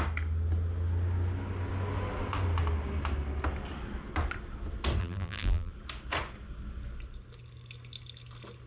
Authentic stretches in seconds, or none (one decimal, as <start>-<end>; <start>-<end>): 0.0-5.0; 5.7-8.7